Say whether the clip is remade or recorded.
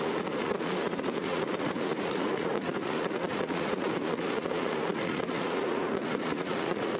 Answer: remade